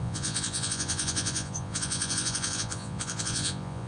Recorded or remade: remade